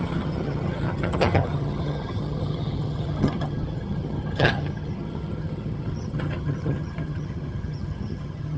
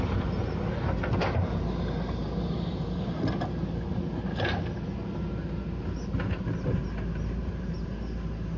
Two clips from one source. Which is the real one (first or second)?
second